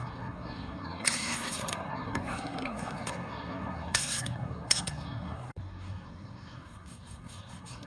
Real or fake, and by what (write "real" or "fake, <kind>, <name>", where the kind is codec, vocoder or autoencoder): fake, codec, SNAC